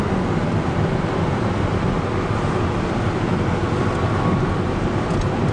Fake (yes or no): no